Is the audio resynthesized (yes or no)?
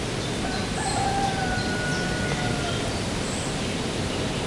no